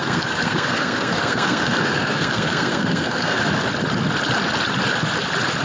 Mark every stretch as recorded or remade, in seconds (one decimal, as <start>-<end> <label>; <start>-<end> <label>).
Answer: 0.0-3.4 remade; 3.4-5.6 recorded